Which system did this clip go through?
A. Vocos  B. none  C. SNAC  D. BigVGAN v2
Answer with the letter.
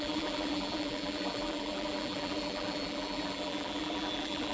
D